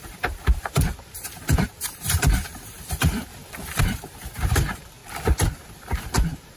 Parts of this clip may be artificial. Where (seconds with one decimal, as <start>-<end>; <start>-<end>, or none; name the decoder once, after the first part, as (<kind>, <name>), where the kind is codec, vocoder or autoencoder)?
0.0-3.3 (vocoder, BigVGAN v2); 3.8-5.0; 5.5-6.6